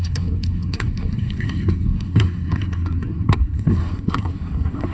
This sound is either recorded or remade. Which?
remade